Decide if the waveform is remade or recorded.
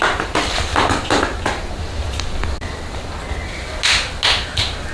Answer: recorded